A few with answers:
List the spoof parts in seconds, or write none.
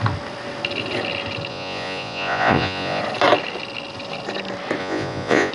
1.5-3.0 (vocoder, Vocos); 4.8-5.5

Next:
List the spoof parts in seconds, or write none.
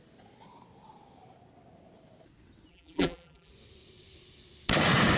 2.7-3.5 (vocoder, BigVGAN v2)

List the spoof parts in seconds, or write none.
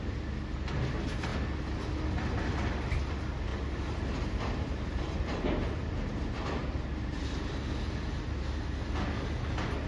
3.5-7.5 (vocoder, BigVGAN v2)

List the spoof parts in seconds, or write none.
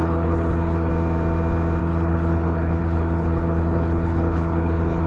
0.0-0.9 (codec, HILCodec); 1.8-5.1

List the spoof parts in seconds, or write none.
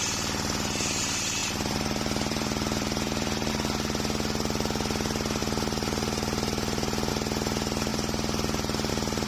1.4-3.5 (vocoder, BigVGAN v2); 7.9-8.9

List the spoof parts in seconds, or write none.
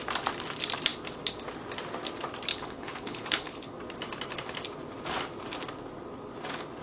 2.5-3.7 (codec, HILCodec)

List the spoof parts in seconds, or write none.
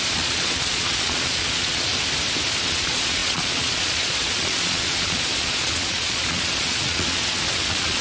0.0-1.9 (vocoder, Vocos); 2.6-8.0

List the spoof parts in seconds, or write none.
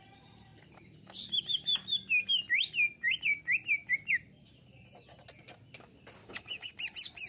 6.2-6.7 (codec, DAC)